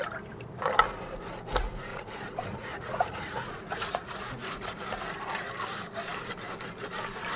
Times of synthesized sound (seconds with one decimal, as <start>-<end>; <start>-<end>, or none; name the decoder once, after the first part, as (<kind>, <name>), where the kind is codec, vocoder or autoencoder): 1.9-4.7 (vocoder, Vocos)